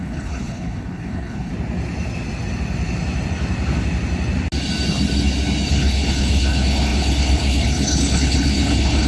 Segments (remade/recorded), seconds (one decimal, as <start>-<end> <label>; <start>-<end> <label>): 0.0-1.5 remade; 1.5-5.7 recorded; 5.7-9.1 remade